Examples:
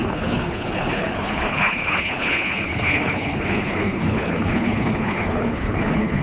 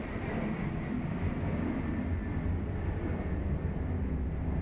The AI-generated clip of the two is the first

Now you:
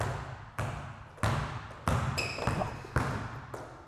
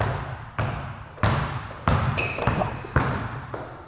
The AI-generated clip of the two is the second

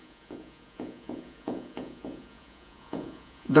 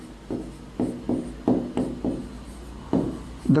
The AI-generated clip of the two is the first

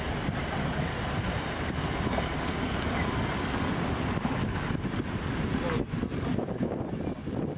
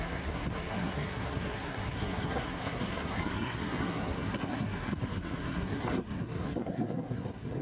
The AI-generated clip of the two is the second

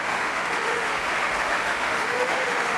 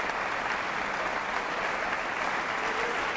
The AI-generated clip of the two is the first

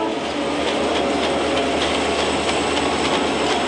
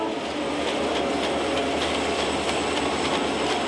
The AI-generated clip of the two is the second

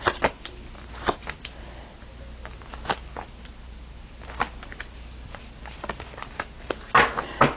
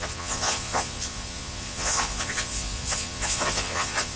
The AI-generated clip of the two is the second